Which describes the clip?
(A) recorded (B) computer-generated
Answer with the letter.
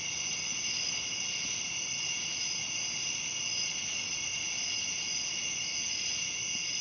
A